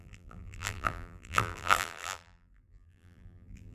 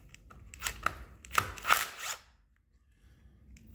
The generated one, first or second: first